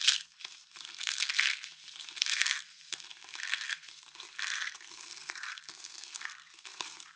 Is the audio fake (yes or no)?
yes